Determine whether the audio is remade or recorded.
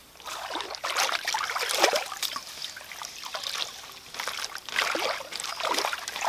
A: recorded